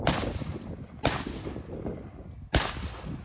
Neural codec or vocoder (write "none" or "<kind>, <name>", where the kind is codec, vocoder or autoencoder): none